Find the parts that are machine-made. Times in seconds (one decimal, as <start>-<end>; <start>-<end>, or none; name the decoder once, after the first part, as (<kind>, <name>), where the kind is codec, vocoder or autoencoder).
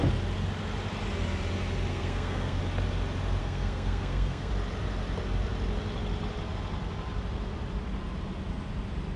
1.9-2.6 (codec, SNAC); 3.4-4.5